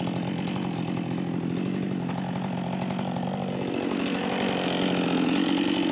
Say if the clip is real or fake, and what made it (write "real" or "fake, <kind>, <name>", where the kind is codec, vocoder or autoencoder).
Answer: real